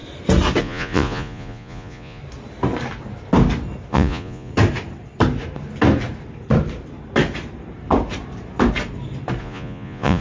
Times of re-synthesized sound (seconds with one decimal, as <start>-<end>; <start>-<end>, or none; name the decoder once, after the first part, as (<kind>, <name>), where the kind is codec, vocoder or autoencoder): 0.6-2.2 (vocoder, Vocos); 3.9-4.5; 9.4-10.2